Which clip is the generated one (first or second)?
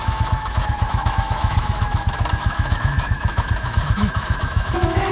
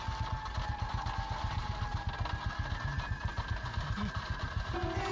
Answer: first